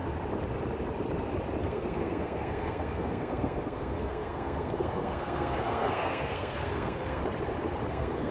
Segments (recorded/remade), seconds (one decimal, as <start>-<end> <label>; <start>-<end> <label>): 0.0-1.6 recorded; 1.6-7.2 remade; 7.2-7.9 recorded; 7.9-8.3 remade